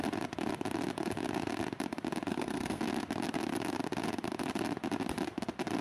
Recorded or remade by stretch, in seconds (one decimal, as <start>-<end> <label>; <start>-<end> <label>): 0.0-2.3 recorded; 2.3-2.8 remade; 2.8-5.8 recorded